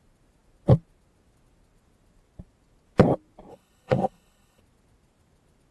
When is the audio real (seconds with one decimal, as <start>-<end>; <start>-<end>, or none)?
0.0-3.5; 4.6-5.7